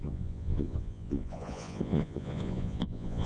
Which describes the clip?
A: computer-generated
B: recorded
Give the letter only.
A